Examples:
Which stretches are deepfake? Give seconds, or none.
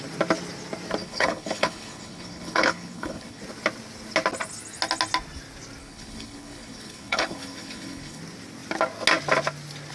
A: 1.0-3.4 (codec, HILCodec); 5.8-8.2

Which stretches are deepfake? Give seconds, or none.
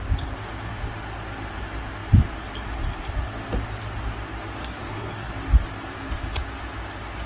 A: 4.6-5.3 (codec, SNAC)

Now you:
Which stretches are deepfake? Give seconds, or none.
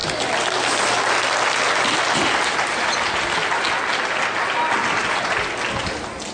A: none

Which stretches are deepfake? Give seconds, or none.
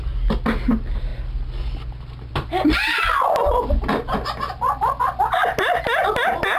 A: none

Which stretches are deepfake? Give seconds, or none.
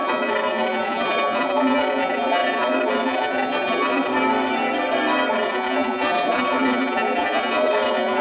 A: 0.0-4.1 (vocoder, Vocos); 5.3-8.2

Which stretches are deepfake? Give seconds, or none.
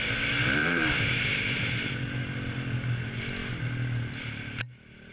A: 0.6-1.9 (vocoder, BigVGAN v2)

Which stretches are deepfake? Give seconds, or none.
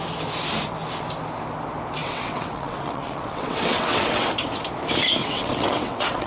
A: 2.0-4.3 (vocoder, WaveNeXt); 5.2-6.3